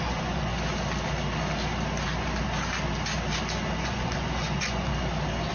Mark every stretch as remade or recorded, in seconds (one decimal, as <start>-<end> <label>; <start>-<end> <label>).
0.0-0.5 remade; 0.5-3.8 recorded; 3.8-4.9 remade; 4.9-5.5 recorded